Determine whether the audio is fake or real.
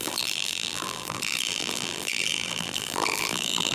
fake